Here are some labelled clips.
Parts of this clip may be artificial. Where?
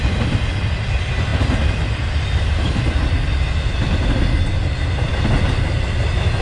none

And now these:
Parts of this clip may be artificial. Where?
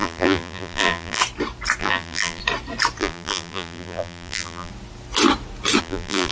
0.0-1.2 (vocoder, BigVGAN v2); 1.8-2.4; 3.0-4.7; 5.8-6.3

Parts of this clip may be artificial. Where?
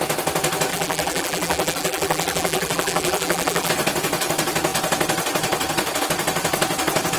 0.7-3.7 (vocoder, BigVGAN v2)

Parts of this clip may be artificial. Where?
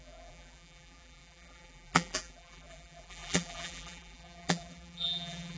0.0-5.6 (vocoder, BigVGAN v2)